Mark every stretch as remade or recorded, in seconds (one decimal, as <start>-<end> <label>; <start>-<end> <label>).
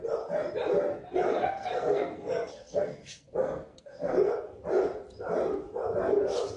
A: 0.0-1.3 recorded; 1.3-4.3 remade; 4.3-6.6 recorded